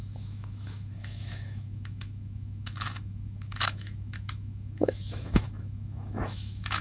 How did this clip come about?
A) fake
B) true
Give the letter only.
A